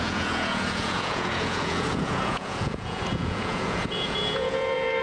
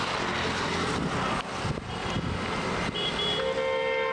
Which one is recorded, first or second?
second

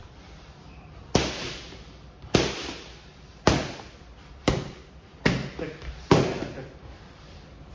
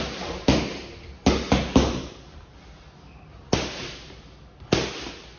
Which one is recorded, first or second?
second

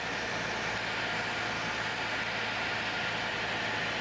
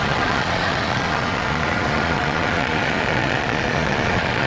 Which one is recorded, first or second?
first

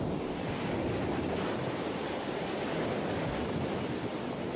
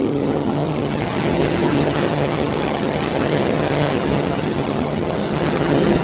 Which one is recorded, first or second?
first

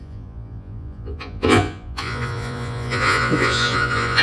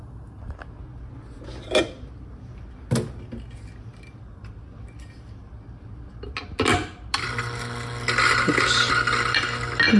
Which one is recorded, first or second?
second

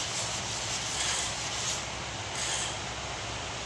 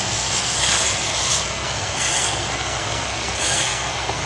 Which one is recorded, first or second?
first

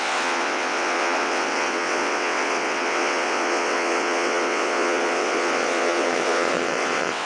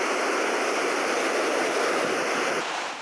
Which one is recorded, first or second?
second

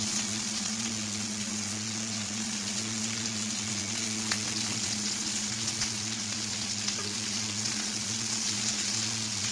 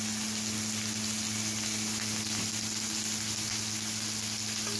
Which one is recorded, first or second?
second